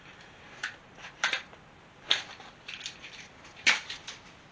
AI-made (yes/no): no